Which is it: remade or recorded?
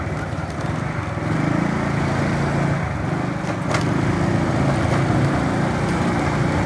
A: recorded